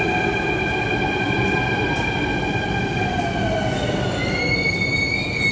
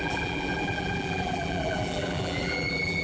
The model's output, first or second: second